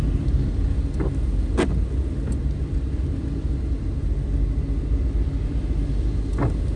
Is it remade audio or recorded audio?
recorded